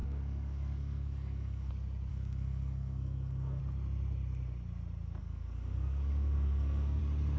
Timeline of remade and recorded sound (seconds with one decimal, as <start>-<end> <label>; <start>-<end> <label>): 0.0-1.7 remade; 1.7-2.1 recorded; 2.1-3.6 remade; 3.6-5.2 recorded; 5.2-7.0 remade; 7.0-7.4 recorded